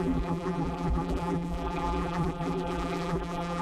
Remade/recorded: remade